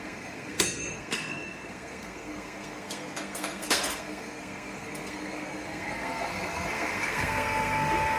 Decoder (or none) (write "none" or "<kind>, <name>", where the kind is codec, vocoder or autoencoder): codec, SNAC